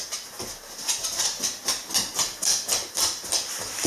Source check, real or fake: real